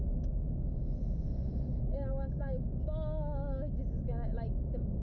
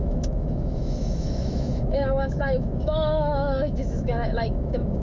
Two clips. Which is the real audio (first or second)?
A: first